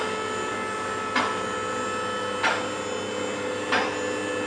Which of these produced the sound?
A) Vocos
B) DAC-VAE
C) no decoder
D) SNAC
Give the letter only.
C